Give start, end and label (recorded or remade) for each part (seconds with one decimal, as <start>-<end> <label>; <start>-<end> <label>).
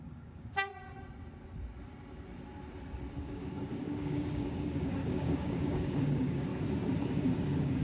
0.0-0.7 remade; 0.7-3.2 recorded; 3.2-6.5 remade; 6.5-7.0 recorded; 7.0-7.8 remade